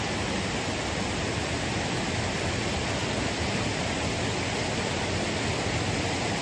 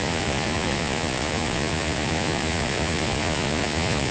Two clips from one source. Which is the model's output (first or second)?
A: second